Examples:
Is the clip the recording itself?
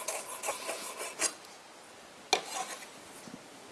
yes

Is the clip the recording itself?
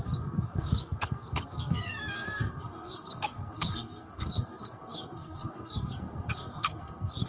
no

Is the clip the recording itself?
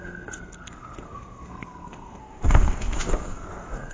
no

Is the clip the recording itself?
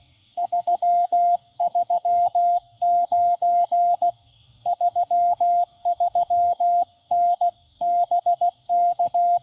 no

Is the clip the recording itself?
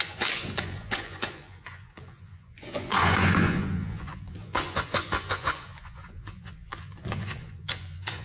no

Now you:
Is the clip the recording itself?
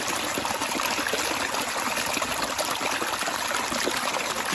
yes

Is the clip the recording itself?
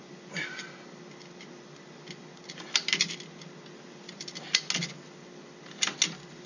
yes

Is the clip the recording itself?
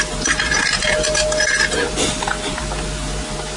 yes